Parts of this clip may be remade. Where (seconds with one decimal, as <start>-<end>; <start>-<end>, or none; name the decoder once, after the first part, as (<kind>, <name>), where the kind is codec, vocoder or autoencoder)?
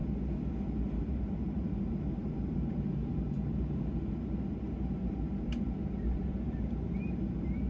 0.6-7.7 (vocoder, BigVGAN v2)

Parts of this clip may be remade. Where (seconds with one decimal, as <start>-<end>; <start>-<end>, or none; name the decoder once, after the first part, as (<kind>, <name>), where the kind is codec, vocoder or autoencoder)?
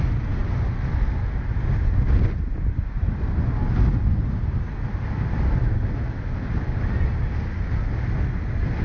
none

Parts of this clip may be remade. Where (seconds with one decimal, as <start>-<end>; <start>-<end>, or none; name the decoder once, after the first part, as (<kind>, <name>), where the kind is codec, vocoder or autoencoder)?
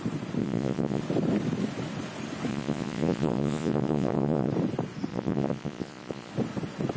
0.4-1.0 (vocoder, Vocos); 2.5-4.5; 5.1-6.3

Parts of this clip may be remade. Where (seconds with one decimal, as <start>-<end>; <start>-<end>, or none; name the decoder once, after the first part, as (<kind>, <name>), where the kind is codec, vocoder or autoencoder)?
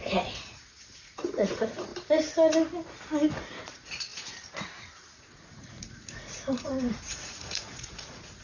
0.0-1.9 (vocoder, Vocos); 3.5-8.4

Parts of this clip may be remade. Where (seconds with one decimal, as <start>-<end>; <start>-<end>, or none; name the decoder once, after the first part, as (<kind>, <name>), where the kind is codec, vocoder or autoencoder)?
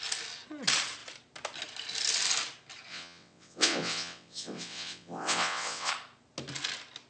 2.9-5.9 (vocoder, WaveNeXt)